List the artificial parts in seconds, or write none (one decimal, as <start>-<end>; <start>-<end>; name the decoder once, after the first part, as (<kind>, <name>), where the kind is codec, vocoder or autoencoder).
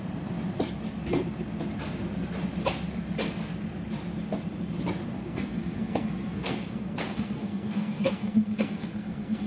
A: 5.2-9.5 (codec, SNAC)